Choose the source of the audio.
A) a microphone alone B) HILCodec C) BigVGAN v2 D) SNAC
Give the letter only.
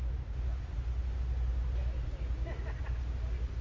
A